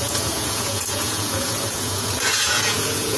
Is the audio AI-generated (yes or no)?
yes